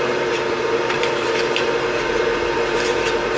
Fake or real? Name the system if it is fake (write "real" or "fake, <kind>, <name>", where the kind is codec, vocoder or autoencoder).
fake, vocoder, BigVGAN v2